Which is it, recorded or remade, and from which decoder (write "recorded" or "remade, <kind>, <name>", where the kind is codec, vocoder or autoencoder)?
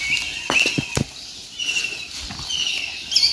recorded